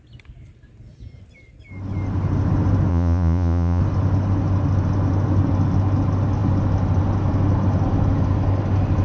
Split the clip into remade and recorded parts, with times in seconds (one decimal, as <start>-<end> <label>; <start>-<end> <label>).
0.0-2.9 recorded; 2.9-3.8 remade; 3.8-9.0 recorded